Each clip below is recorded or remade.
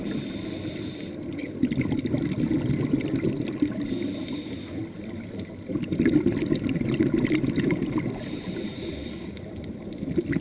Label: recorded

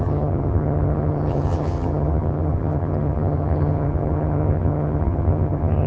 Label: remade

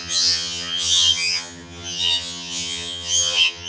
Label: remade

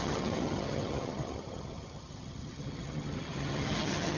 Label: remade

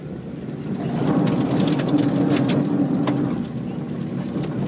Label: recorded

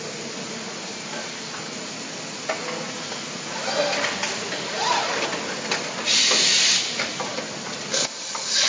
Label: recorded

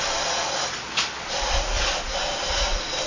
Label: recorded